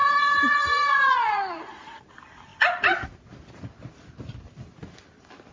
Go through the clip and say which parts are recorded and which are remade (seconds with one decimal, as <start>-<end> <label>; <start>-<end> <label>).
0.0-2.1 remade; 2.1-5.5 recorded